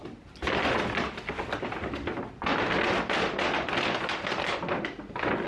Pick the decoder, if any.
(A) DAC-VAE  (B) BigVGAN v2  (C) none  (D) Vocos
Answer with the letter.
C